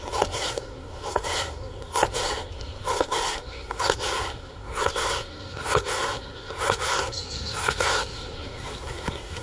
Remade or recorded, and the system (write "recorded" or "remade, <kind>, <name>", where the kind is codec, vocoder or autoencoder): remade, codec, SNAC